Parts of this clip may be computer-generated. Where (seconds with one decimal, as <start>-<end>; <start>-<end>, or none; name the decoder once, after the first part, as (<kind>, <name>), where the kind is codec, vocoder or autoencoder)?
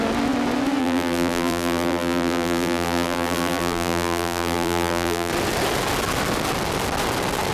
0.8-5.3 (vocoder, BigVGAN v2)